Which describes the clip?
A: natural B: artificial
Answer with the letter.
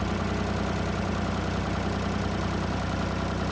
A